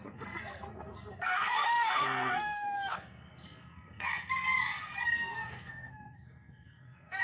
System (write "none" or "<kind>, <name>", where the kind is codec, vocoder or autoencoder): codec, SNAC